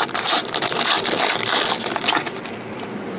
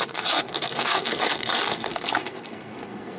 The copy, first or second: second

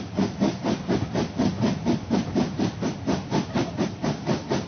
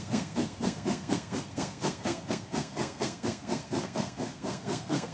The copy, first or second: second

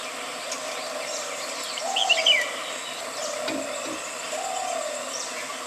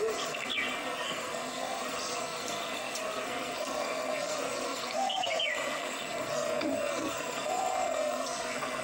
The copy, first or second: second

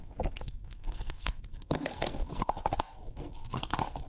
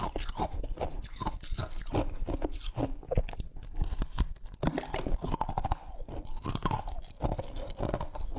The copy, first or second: first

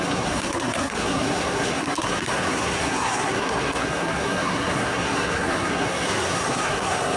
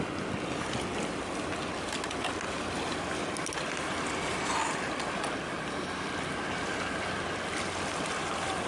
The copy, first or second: first